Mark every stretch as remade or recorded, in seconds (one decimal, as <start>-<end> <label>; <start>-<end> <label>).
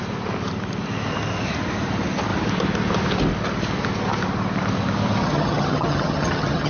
0.0-5.2 recorded; 5.2-6.7 remade